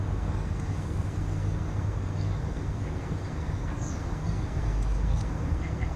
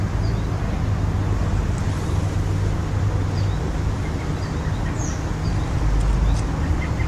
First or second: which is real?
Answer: second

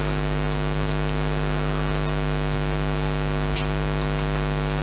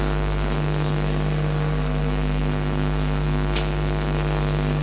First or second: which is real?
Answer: first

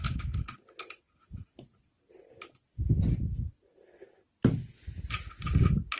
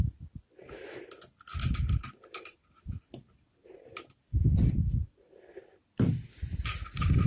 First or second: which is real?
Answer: first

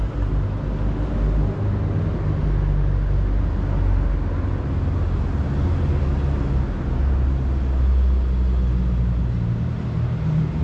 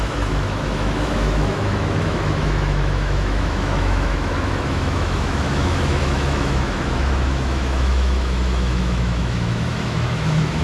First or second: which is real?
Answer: first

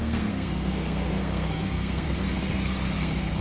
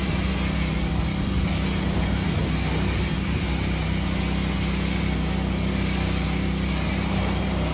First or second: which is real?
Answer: second